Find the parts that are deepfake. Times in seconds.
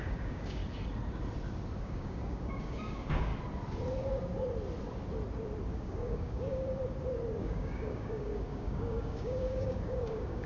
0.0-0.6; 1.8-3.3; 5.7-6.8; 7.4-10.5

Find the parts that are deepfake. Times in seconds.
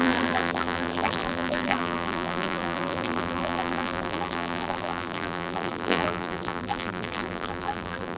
0.0-8.2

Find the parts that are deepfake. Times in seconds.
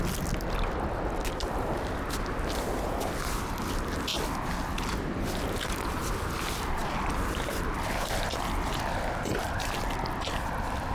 none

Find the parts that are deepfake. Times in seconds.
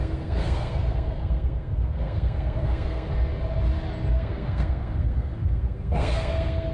0.0-3.1; 4.1-6.7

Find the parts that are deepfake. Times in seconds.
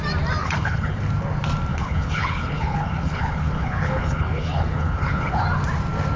0.4-1.0; 1.7-5.4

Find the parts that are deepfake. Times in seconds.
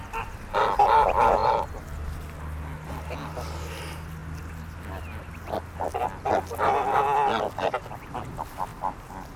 none